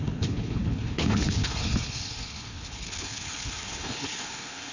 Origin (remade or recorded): remade